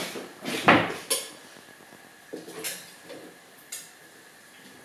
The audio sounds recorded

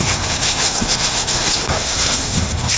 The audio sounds remade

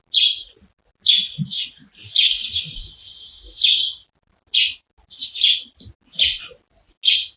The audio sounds recorded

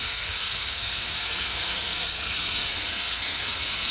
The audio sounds remade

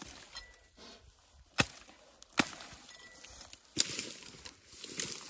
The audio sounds recorded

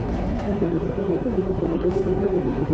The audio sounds remade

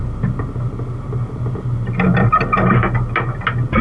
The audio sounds recorded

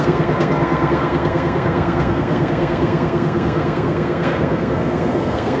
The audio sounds remade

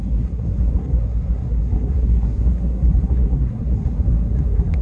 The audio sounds remade